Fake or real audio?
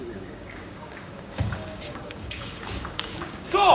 fake